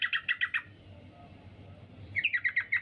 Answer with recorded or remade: recorded